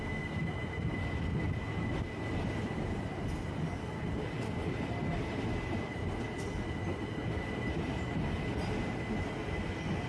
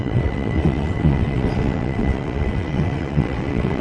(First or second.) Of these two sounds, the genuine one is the first